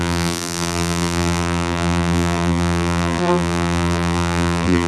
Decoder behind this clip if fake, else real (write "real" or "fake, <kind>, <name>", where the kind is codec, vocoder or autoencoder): fake, vocoder, BigVGAN v2